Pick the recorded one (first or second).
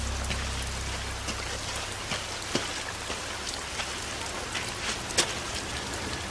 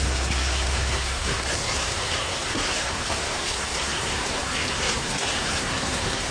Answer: first